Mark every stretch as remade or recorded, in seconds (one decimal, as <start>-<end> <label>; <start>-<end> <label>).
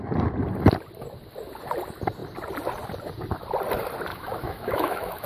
0.0-4.1 recorded; 4.1-5.3 remade